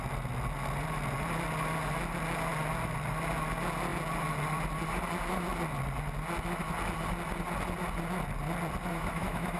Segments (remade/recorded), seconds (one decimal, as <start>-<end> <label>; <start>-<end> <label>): 0.0-8.9 recorded; 8.9-9.6 remade